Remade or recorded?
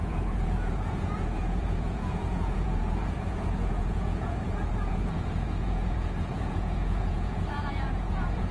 remade